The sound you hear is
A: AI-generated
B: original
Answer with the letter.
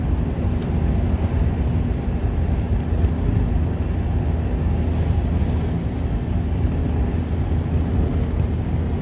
B